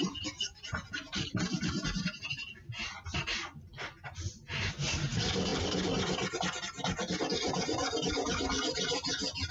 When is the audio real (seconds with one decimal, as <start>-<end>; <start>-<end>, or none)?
0.0-9.5